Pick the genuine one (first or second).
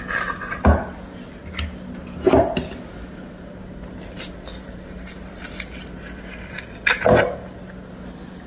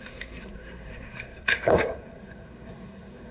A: first